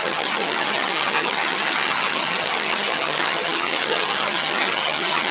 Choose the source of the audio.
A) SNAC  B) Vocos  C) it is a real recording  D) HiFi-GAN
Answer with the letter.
D